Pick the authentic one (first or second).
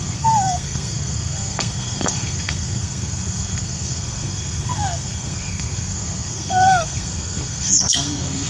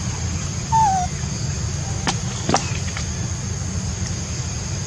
second